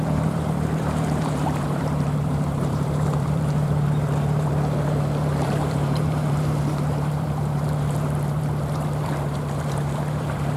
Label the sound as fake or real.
fake